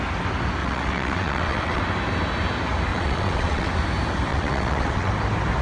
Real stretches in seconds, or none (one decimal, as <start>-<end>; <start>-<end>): 0.0-0.6; 1.8-2.9; 3.7-4.3; 5.1-5.6